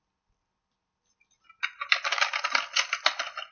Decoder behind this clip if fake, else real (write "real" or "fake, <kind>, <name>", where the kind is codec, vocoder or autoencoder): real